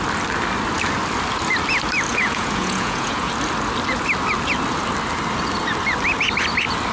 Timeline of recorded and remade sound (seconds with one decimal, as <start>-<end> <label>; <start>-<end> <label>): 0.0-2.1 recorded; 2.1-3.3 remade; 3.3-6.9 recorded